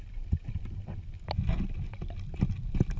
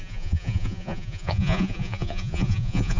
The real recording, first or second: first